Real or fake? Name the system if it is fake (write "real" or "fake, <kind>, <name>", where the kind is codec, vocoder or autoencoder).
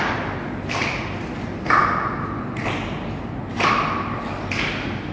real